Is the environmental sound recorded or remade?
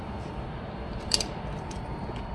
remade